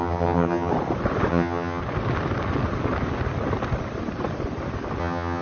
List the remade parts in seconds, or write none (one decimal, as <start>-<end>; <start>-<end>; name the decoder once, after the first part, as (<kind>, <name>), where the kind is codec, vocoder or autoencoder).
0.0-0.7 (vocoder, HiFi-GAN); 1.3-1.8; 5.0-5.4